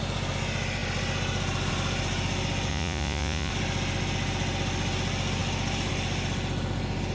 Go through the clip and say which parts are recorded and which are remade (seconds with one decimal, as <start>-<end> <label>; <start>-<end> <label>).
0.0-2.7 recorded; 2.7-3.5 remade; 3.5-7.1 recorded